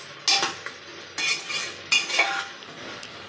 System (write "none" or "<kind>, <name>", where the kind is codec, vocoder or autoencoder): none